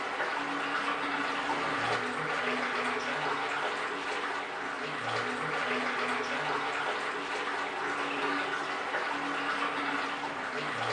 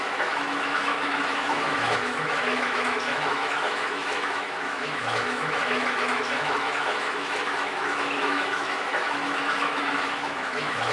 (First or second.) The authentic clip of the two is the first